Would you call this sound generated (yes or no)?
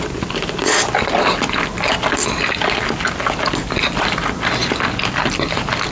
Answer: no